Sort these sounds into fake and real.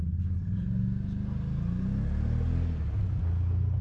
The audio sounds real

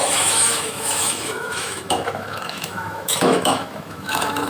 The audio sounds fake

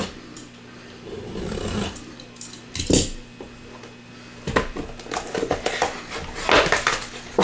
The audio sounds real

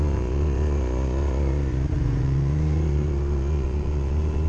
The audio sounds fake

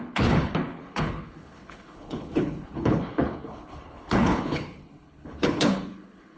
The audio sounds fake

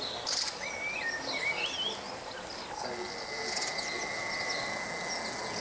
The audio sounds real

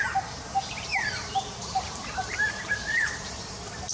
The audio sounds fake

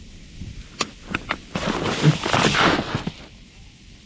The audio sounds real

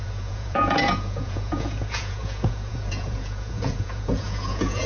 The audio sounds fake